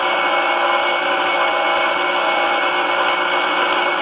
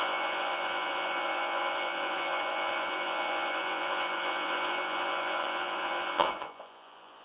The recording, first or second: first